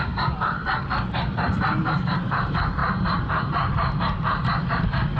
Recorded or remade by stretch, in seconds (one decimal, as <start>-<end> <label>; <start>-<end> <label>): 0.0-0.6 remade; 0.6-2.0 recorded; 2.0-5.2 remade